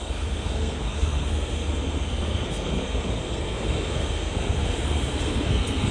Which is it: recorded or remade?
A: remade